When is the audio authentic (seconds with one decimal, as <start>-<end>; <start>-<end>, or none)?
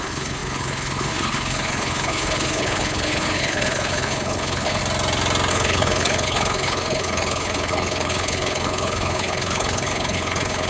4.8-5.5